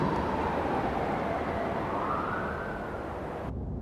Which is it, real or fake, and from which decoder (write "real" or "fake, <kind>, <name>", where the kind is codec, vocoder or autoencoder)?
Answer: real